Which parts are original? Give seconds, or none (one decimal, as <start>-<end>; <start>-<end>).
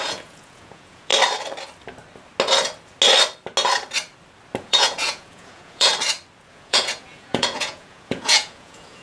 1.1-4.6; 5.9-6.5